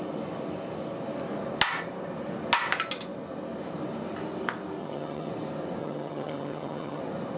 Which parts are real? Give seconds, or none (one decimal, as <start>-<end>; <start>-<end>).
0.0-4.8; 5.3-5.8; 7.0-7.4